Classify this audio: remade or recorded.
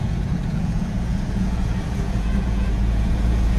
remade